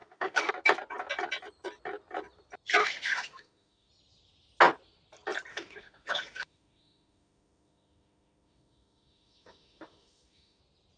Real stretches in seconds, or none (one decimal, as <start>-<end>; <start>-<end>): 0.5-2.8; 3.9-5.5; 10.6-11.0